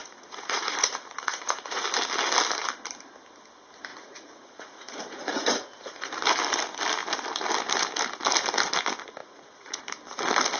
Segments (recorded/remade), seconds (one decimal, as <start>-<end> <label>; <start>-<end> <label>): 0.0-1.8 remade; 1.8-3.9 recorded; 3.9-6.1 remade; 6.1-9.2 recorded; 9.2-9.8 remade; 9.8-10.6 recorded